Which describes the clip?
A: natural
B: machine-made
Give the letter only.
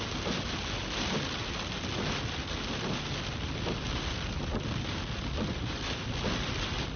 A